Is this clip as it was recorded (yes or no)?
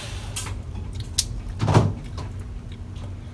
yes